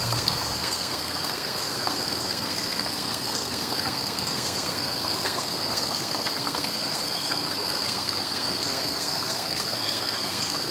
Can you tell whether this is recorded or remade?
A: remade